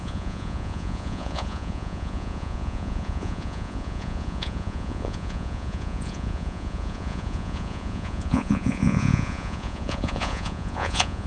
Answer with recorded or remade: remade